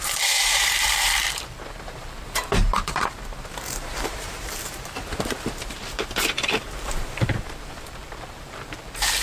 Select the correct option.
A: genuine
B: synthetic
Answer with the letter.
B